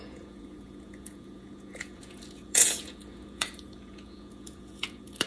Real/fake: fake